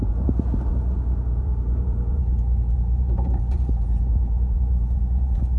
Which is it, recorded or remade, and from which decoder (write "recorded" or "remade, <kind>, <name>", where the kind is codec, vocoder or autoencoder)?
remade, vocoder, Vocos